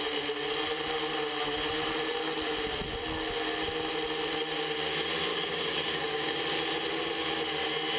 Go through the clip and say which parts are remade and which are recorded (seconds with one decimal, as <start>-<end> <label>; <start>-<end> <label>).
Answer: 0.0-5.3 recorded; 5.3-6.4 remade; 6.4-8.0 recorded